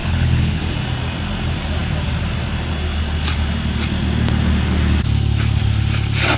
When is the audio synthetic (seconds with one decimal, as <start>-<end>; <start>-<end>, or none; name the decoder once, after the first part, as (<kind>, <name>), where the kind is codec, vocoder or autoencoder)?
0.0-0.6 (codec, HILCodec)